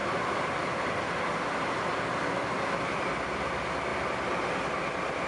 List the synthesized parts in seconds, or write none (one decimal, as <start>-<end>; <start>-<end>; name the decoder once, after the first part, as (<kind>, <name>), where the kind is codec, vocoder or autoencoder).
none

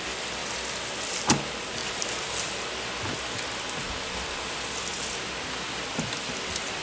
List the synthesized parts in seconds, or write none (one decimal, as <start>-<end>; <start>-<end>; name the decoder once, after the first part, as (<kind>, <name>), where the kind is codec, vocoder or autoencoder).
none

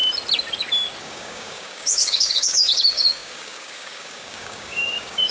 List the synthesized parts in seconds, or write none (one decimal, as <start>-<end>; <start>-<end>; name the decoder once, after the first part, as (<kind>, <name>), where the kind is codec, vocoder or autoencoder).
1.0-5.3 (codec, DAC)

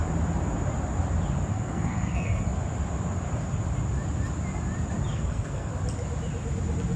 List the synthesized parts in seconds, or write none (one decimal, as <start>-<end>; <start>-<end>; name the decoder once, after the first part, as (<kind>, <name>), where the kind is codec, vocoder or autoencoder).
1.5-2.4 (codec, SNAC); 5.1-5.7

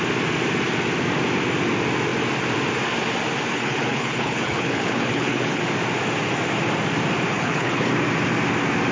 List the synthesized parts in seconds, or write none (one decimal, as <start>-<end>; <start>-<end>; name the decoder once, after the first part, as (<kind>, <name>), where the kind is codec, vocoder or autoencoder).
3.5-5.6 (codec, HILCodec); 7.3-7.9